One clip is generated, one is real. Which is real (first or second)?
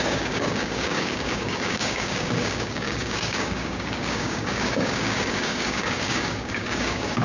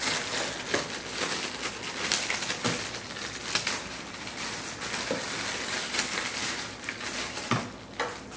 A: second